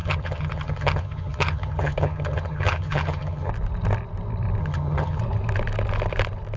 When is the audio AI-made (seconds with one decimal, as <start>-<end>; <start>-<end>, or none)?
0.0-3.5; 4.6-5.2